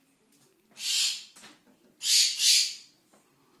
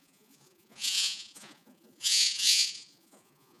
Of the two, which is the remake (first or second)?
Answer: second